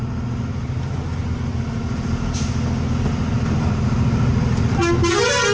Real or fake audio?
real